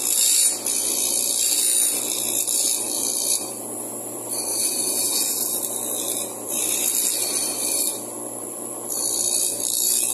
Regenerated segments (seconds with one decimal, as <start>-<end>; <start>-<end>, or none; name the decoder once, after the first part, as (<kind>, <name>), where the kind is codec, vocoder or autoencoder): 4.5-5.5 (vocoder, Vocos)